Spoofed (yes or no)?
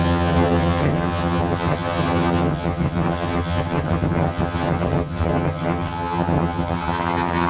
yes